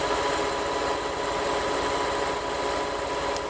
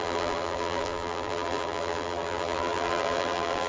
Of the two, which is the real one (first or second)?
first